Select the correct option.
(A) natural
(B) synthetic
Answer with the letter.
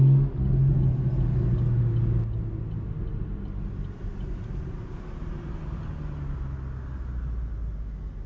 A